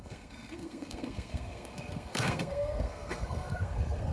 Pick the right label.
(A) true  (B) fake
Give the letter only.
B